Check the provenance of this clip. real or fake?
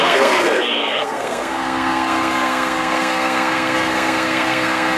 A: fake